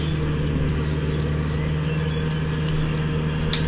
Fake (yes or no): no